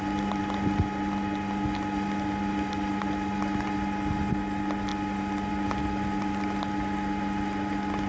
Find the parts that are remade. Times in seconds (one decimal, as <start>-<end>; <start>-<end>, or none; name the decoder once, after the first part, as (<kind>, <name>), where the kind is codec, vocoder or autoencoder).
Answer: none